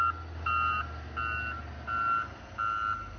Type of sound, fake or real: real